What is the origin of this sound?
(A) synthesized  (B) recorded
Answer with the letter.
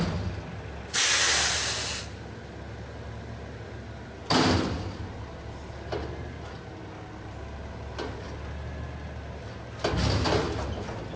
B